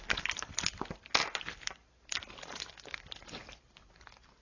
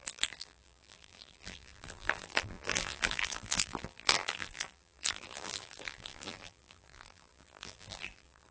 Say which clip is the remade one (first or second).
second